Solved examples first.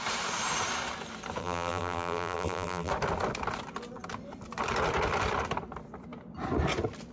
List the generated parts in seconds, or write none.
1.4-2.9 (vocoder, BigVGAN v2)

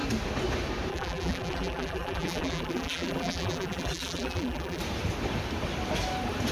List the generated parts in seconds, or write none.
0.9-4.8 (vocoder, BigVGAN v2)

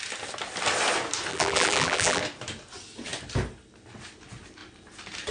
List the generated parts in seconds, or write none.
1.3-2.2 (vocoder, BigVGAN v2)